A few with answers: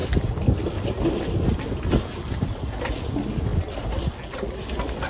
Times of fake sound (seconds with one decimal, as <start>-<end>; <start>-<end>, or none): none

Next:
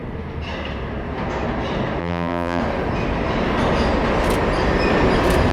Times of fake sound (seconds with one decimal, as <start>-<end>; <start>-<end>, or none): 2.0-2.6

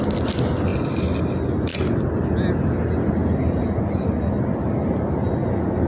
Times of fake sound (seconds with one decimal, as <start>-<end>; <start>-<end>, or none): none

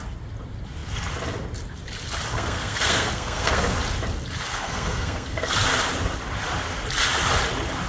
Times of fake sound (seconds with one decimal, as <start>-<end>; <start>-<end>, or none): 2.3-3.8; 4.5-5.5

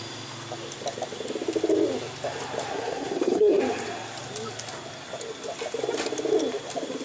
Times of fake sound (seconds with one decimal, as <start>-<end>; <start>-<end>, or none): 2.7-3.6

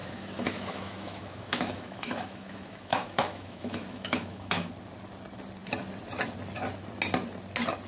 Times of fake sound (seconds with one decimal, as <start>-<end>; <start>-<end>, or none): 0.0-4.7